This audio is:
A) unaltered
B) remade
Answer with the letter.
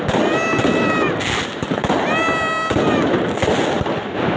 A